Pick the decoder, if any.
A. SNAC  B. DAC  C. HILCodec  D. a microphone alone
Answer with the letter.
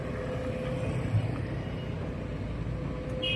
D